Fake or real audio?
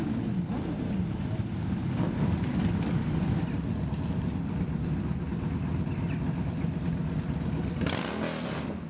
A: real